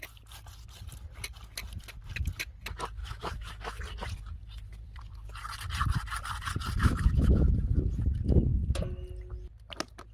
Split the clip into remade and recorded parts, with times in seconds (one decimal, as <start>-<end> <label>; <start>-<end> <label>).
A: 0.0-3.0 recorded; 3.0-3.8 remade; 3.8-6.8 recorded; 6.8-7.4 remade; 7.4-10.1 recorded